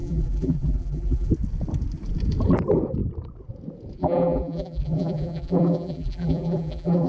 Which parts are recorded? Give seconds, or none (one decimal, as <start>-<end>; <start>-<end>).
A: 1.3-4.0